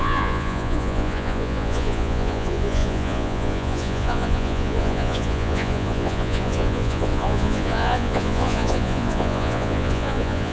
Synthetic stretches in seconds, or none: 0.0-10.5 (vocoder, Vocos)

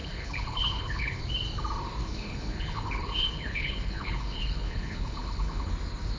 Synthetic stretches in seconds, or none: 0.0-1.2 (codec, HILCodec); 2.0-5.7

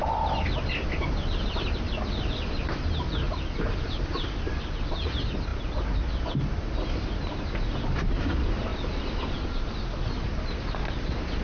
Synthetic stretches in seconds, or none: none

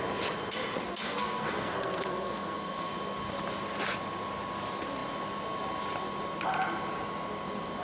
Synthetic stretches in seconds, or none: 0.9-2.9 (codec, SNAC)

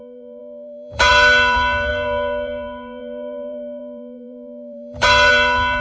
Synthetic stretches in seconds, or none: 0.0-5.8 (vocoder, BigVGAN v2)

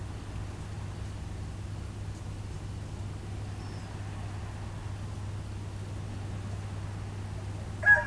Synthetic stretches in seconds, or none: none

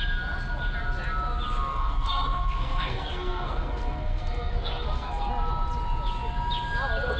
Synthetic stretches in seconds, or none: 1.7-5.3 (codec, SNAC)